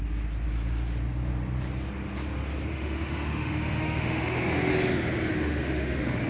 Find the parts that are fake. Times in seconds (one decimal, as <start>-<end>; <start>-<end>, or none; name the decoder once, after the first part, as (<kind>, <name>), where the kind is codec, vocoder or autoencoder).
2.7-4.7 (autoencoder, DAC-VAE); 5.3-6.3